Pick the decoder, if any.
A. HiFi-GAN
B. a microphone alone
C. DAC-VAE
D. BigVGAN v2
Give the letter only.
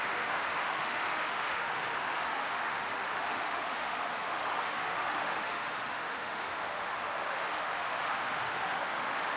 C